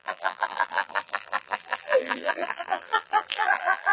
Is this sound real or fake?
fake